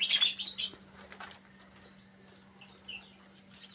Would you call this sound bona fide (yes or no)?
yes